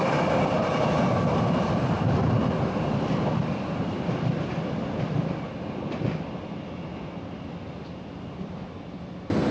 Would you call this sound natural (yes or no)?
yes